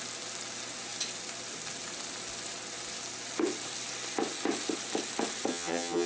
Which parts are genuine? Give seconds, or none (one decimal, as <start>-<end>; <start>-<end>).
0.0-5.5